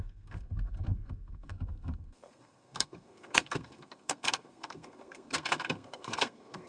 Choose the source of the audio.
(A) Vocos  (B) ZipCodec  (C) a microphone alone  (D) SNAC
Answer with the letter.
D